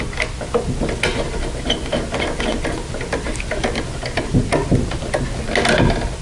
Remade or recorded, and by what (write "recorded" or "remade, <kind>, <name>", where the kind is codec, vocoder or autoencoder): recorded